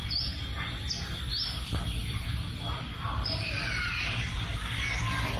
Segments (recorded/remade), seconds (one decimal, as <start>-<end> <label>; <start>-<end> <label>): 0.0-0.5 remade; 0.5-2.0 recorded; 2.0-4.5 remade; 4.5-5.4 recorded